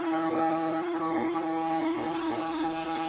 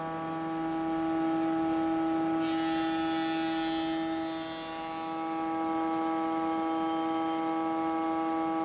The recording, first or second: second